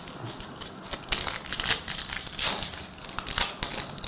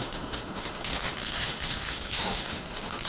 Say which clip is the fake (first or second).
second